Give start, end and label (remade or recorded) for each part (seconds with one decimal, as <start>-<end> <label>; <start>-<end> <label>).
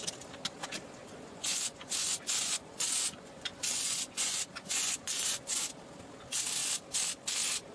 0.0-1.0 recorded; 1.0-5.6 remade; 5.6-7.7 recorded